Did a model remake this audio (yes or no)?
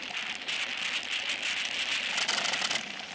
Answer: no